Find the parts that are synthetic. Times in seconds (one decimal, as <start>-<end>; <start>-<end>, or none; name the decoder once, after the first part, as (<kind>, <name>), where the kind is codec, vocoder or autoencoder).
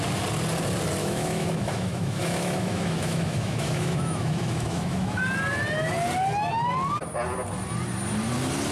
1.0-5.2 (autoencoder, DAC-VAE)